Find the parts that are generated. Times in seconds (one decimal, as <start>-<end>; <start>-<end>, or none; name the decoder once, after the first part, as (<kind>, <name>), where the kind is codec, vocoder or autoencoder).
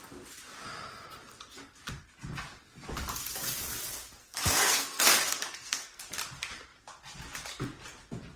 4.2-6.0 (codec, SNAC)